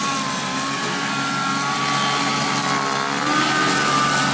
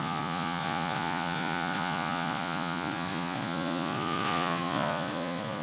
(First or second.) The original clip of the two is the first